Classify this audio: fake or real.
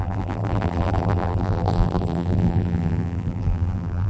fake